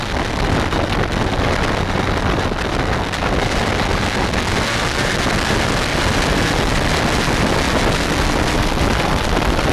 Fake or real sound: real